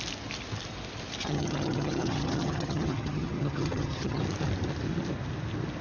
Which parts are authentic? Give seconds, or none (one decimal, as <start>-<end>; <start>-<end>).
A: 0.0-1.2; 4.2-5.8